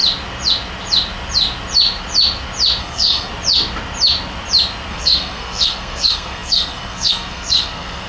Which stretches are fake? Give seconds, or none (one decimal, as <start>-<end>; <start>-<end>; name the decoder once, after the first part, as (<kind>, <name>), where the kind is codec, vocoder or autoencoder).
2.8-3.3 (codec, SNAC); 4.9-8.1